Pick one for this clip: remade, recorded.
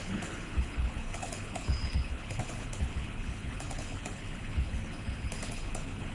remade